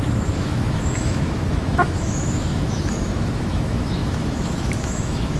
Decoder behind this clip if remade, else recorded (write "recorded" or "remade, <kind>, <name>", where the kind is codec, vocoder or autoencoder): remade, autoencoder, DAC-VAE